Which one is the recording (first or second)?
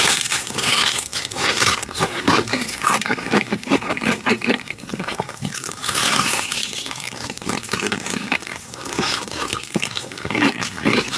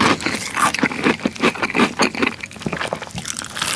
second